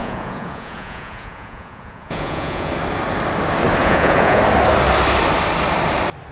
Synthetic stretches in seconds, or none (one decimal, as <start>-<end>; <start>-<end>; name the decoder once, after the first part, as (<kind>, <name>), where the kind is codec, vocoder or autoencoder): 0.0-2.7 (vocoder, Vocos); 3.8-4.4